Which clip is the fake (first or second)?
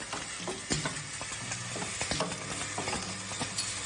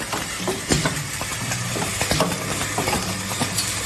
second